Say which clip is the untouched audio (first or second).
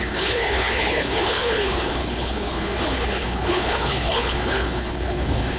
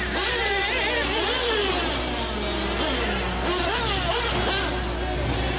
second